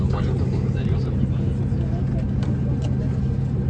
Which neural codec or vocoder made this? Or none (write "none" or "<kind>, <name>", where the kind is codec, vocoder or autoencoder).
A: none